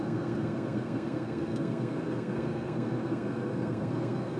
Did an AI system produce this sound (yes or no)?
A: yes